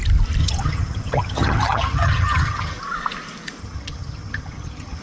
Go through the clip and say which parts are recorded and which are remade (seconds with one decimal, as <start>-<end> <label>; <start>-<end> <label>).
0.0-0.4 recorded; 0.4-2.8 remade; 2.8-3.6 recorded; 3.6-5.0 remade